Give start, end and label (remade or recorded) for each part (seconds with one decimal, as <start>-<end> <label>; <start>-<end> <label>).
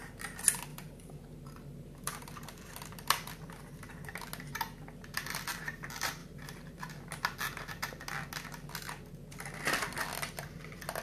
0.0-0.7 recorded; 0.7-3.6 remade; 3.6-6.2 recorded; 6.2-6.9 remade; 6.9-11.0 recorded